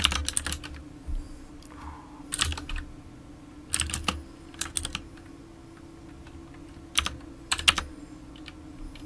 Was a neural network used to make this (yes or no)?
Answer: no